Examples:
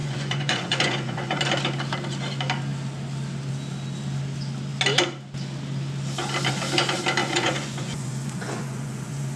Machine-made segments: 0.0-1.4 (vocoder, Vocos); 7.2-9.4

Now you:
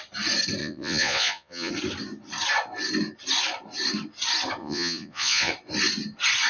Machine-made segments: 0.6-1.7 (vocoder, Vocos); 4.6-5.5

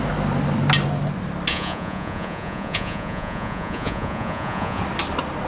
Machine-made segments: 1.5-4.8 (vocoder, Vocos)

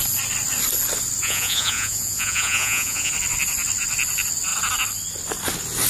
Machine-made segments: 1.2-3.1 (vocoder, Vocos)

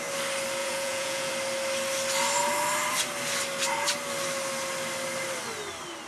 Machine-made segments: 0.6-1.3 (vocoder, Vocos)

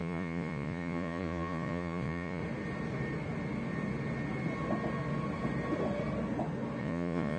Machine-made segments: 0.0-2.4 (vocoder, Vocos); 6.8-7.4

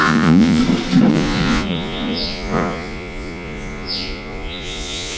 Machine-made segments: 0.0-0.6 (vocoder, Vocos); 1.1-5.2

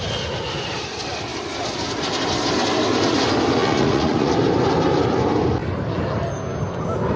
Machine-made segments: 3.6-4.3 (vocoder, Vocos)